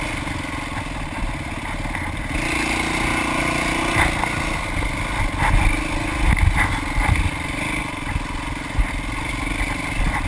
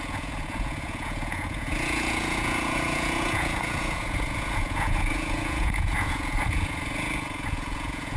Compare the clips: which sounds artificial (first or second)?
second